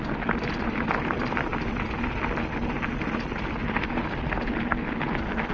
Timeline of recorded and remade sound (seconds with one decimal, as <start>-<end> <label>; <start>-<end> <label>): 0.0-5.5 recorded